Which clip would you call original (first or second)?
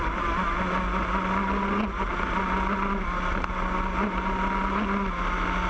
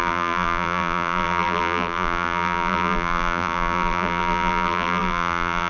first